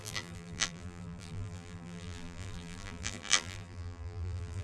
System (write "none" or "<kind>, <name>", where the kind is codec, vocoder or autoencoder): vocoder, BigVGAN v2